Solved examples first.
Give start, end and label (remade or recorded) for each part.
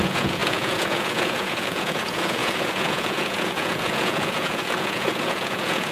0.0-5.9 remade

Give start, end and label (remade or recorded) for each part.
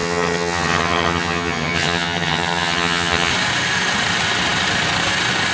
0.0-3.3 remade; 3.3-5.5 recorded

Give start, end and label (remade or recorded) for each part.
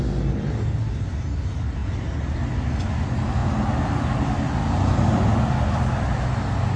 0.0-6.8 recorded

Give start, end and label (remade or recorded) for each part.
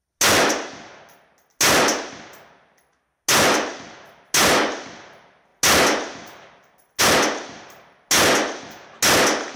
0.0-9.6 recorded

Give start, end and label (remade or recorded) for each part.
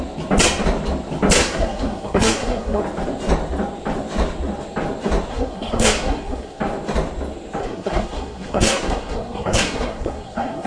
0.0-1.4 recorded; 1.4-2.8 remade; 2.8-5.3 recorded; 5.3-6.6 remade; 6.6-7.6 recorded; 7.6-10.7 remade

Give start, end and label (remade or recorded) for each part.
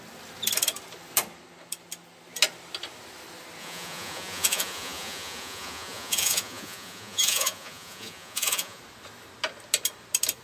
0.0-3.6 recorded; 3.6-8.8 remade; 8.8-10.4 recorded